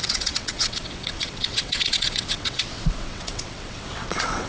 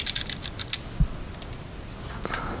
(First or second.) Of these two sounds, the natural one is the second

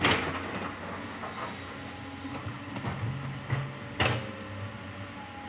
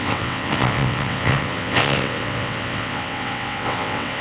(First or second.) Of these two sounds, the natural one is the first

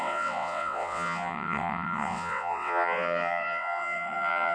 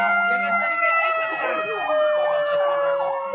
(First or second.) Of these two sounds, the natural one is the second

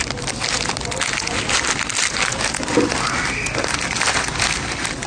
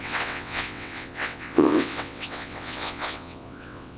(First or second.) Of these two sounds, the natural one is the first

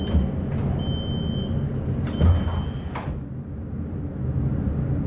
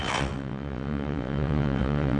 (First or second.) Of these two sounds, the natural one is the first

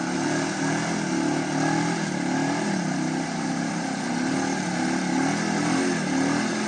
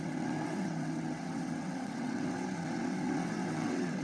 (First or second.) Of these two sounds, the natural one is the first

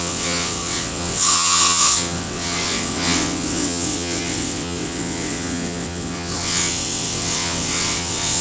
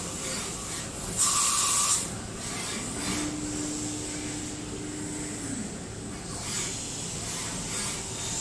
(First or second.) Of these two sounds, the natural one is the second